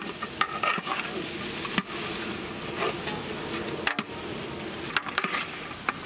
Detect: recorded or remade recorded